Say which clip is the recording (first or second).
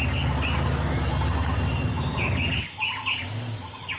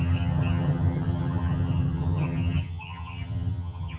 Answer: first